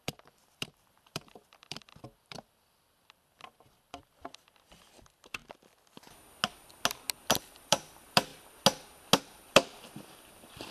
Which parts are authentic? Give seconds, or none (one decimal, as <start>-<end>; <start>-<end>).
5.4-7.4; 8.3-9.2

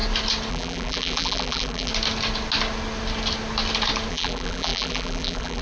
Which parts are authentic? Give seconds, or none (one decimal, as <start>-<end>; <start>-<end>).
0.0-0.5; 1.9-4.1

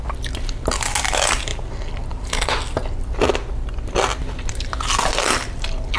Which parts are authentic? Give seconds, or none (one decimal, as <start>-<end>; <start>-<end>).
0.0-6.0